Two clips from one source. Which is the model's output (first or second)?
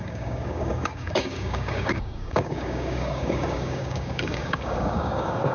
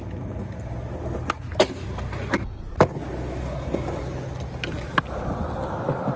first